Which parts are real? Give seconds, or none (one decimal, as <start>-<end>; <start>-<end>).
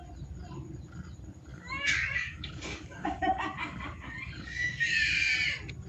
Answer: 0.0-1.5; 5.0-5.9